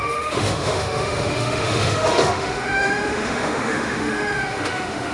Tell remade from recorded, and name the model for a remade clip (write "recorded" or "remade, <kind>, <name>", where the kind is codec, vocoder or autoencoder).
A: remade, autoencoder, DAC-VAE